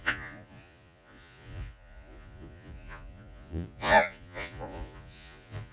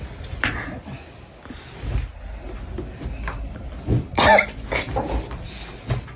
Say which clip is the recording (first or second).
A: second